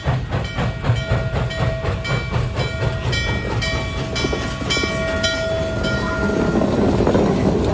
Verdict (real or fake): real